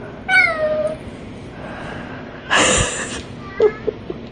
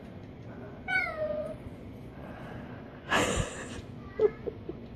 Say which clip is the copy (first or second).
second